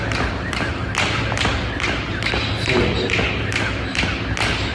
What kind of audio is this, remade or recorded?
recorded